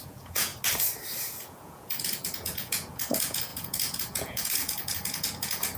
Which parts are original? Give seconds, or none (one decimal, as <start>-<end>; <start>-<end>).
0.5-1.2